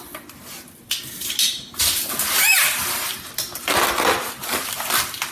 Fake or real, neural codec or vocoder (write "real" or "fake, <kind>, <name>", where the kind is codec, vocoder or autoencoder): real